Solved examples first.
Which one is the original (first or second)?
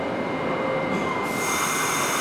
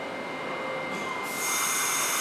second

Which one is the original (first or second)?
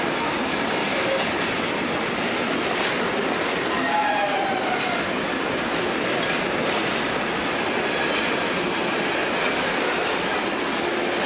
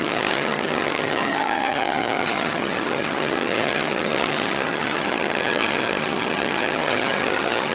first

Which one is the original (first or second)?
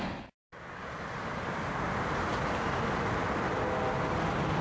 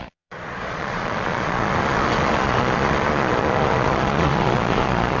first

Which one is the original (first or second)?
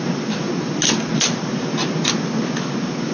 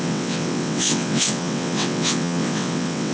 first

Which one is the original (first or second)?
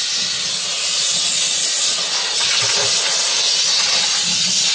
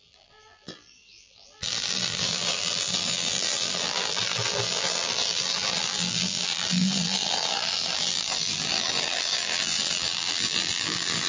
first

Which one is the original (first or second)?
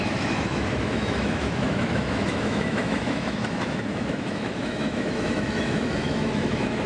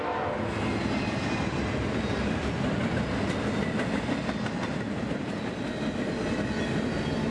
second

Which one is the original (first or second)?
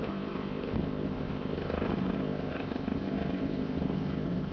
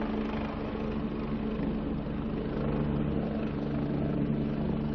second